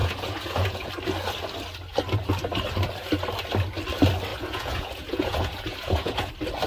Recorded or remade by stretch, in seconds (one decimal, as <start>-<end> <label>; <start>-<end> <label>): 0.0-0.9 remade; 0.9-4.3 recorded; 4.3-6.3 remade; 6.3-6.7 recorded